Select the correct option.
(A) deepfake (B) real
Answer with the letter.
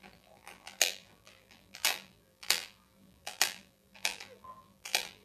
A